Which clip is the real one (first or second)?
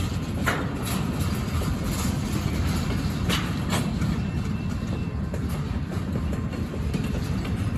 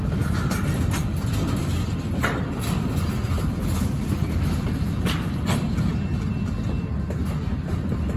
second